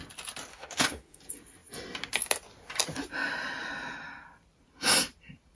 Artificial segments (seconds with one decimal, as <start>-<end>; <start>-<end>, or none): 0.5-1.2